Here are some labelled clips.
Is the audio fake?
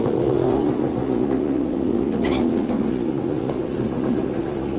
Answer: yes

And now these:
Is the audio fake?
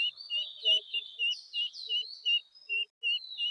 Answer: no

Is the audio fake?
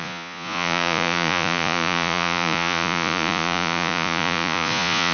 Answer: yes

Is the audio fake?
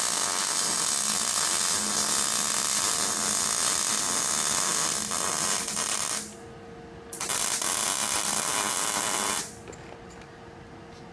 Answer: no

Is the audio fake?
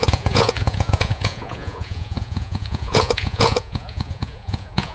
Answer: yes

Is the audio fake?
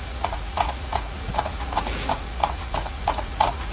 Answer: yes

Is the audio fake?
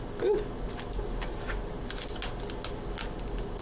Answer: no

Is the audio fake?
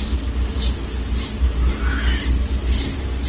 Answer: no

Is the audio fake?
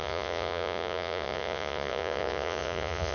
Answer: yes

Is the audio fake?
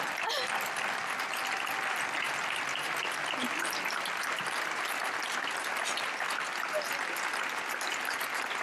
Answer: no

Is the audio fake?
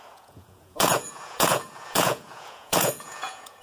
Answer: yes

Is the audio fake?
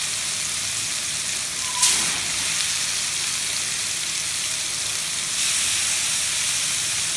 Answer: no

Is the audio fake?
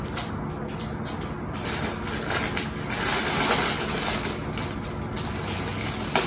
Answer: no